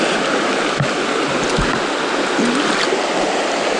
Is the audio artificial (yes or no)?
no